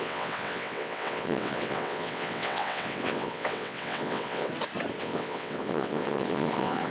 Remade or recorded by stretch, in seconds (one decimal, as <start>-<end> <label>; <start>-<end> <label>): 0.0-4.5 remade; 4.5-5.0 recorded; 5.0-6.9 remade